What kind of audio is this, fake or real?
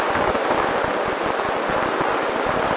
real